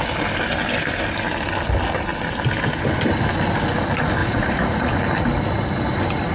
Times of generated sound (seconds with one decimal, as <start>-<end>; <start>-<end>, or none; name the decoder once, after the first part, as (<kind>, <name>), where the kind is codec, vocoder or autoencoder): 4.2-5.0 (vocoder, Vocos)